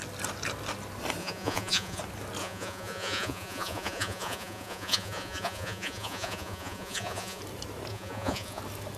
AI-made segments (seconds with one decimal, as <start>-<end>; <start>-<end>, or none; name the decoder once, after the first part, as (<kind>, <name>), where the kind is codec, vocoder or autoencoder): 1.2-2.0 (vocoder, Vocos); 2.4-7.4; 7.9-8.6